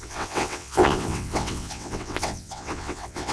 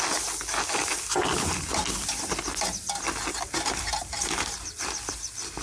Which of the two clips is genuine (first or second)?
second